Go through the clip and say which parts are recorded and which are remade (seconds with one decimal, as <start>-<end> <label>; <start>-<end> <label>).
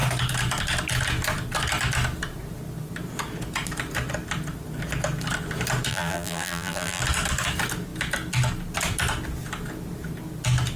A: 0.0-5.9 recorded; 5.9-7.0 remade; 7.0-10.8 recorded